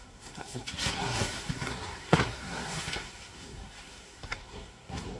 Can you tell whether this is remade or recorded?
remade